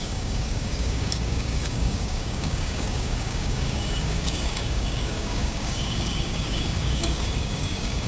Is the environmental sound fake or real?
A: fake